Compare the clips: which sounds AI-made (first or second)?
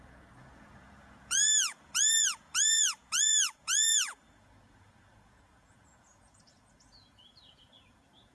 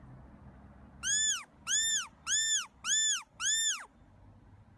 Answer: first